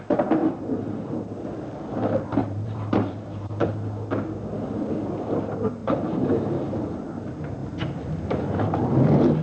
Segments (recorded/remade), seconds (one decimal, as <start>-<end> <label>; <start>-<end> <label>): 0.0-0.4 recorded; 0.4-1.1 remade; 1.1-2.4 recorded; 2.4-3.7 remade; 3.7-5.8 recorded; 5.8-6.7 remade; 6.7-9.4 recorded